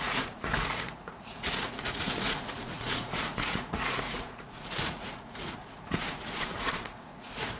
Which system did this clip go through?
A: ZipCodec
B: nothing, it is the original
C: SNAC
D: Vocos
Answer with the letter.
D